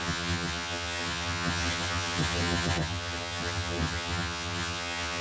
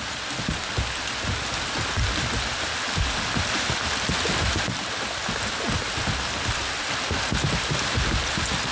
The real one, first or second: second